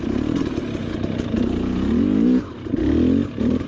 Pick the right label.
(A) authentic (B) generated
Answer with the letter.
A